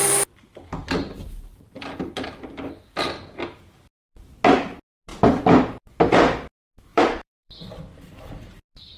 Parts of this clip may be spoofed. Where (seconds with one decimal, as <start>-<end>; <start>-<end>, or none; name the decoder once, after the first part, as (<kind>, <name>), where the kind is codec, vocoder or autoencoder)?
0.8-3.3 (vocoder, BigVGAN v2); 6.9-8.2